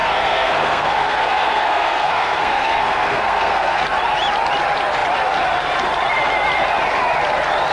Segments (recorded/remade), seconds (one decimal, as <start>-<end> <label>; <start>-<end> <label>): 0.0-3.8 remade; 3.8-7.7 recorded

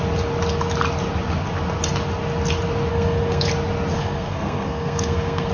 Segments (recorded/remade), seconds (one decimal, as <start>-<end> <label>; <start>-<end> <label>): 0.0-2.9 recorded; 2.9-3.5 remade; 3.5-3.9 recorded; 3.9-5.5 remade

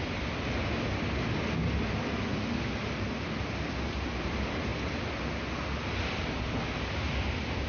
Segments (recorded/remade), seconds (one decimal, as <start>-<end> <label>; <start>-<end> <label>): 0.0-7.7 recorded